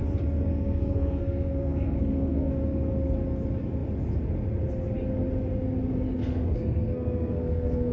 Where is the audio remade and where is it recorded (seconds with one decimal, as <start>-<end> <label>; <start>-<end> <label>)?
0.0-0.5 recorded; 0.5-2.5 remade; 2.5-6.2 recorded; 6.2-7.9 remade